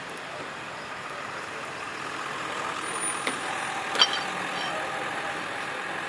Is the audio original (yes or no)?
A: yes